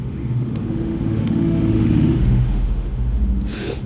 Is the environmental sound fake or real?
fake